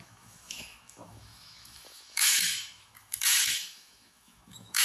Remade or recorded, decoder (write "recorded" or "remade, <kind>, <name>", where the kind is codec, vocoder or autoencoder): remade, autoencoder, DAC-VAE